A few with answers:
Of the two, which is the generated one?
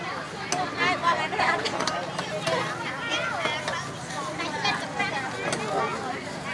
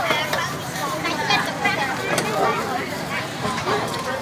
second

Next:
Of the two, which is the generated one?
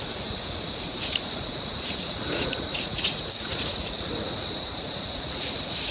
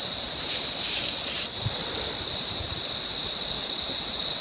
first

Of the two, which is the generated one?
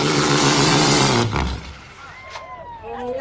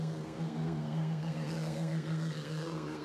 second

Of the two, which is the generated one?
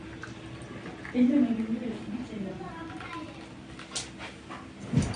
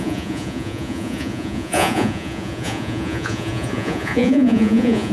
second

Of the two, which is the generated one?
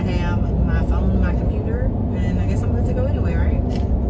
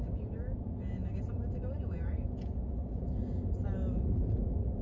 second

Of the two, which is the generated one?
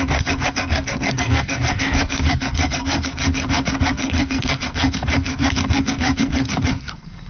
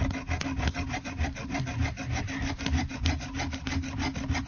first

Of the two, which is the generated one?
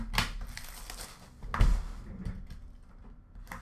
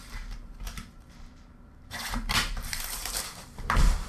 second